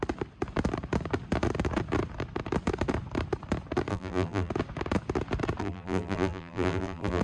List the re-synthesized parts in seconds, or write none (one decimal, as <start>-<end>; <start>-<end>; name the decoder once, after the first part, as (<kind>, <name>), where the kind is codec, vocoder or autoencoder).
3.9-4.5 (vocoder, BigVGAN v2); 5.6-7.2